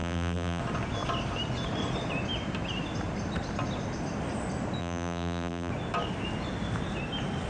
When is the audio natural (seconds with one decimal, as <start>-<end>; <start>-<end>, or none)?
0.6-4.8; 5.7-7.5